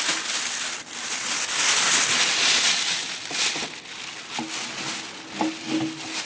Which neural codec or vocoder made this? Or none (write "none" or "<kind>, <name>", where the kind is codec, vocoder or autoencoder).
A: none